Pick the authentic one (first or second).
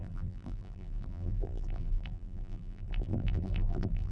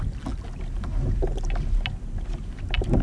second